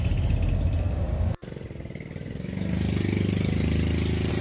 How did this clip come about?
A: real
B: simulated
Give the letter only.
A